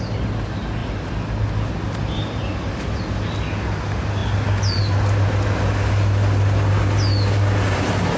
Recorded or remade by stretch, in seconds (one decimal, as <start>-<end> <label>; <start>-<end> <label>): 0.0-8.2 recorded